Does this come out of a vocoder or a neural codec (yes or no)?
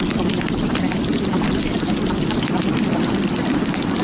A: no